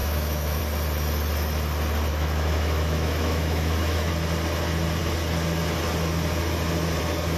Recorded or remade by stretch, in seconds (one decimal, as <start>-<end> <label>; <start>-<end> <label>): 0.0-0.6 remade; 0.6-2.1 recorded; 2.1-4.1 remade; 4.1-7.4 recorded

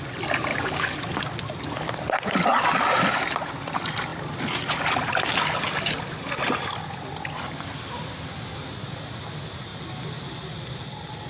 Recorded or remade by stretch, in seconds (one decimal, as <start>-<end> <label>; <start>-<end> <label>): 0.0-0.5 recorded; 0.5-1.2 remade; 1.2-11.3 recorded

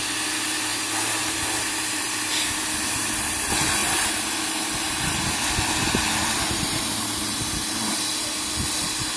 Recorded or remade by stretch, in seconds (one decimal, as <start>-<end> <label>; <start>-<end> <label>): 0.0-0.7 recorded; 0.7-2.6 remade; 2.6-3.8 recorded; 3.8-5.5 remade; 5.5-6.2 recorded; 6.2-8.1 remade; 8.1-9.2 recorded

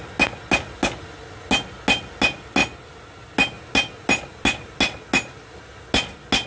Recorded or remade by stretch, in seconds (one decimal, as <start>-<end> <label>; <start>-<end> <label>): 0.0-6.5 recorded

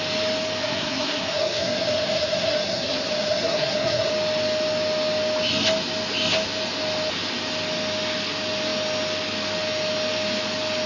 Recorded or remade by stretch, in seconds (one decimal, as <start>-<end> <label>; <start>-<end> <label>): 0.0-0.6 recorded; 0.6-4.1 remade; 4.1-10.9 recorded

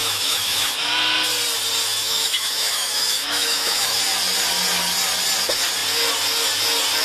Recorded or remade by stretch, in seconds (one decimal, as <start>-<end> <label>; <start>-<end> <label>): 0.0-0.9 remade; 0.9-2.0 recorded; 2.0-4.0 remade; 4.0-7.0 recorded